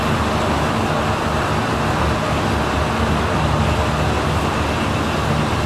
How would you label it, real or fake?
real